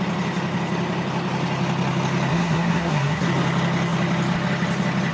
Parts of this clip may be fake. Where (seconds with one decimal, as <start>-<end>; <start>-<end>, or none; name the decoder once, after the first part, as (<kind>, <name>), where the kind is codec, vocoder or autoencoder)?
2.3-3.3 (codec, SNAC)